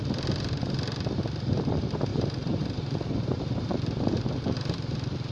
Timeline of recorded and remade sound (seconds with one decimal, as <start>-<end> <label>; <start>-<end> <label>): 0.0-2.1 recorded; 2.1-5.3 remade